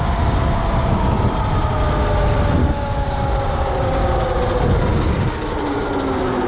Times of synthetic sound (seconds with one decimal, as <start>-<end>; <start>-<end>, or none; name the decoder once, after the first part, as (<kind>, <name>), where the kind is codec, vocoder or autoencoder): 2.6-4.4 (codec, DAC); 4.9-5.7